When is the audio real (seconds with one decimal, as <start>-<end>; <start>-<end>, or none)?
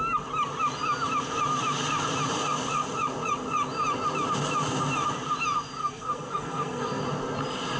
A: 0.0-5.8; 7.0-7.8